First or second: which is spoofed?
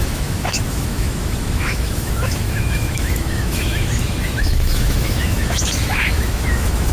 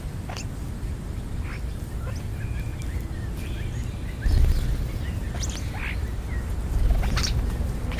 first